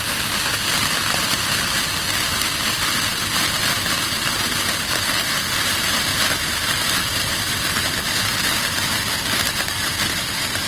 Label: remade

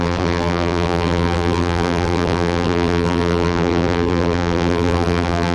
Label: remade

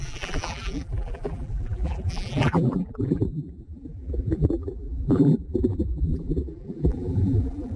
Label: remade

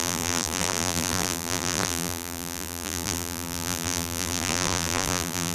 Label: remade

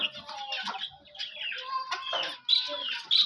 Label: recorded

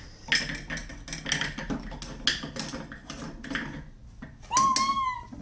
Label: recorded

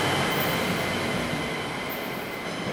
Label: recorded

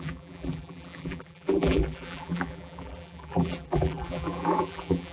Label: remade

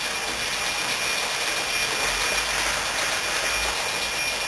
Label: recorded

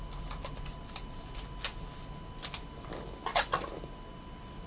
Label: recorded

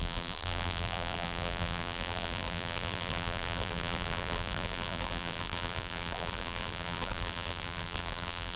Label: remade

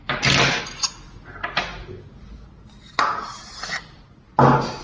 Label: recorded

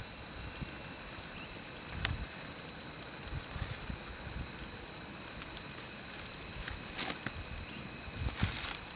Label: recorded